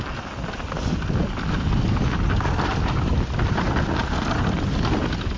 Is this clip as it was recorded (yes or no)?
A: yes